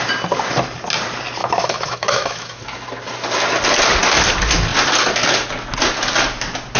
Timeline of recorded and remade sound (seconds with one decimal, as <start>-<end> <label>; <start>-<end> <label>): 0.0-1.4 recorded; 1.4-2.6 remade; 2.6-6.8 recorded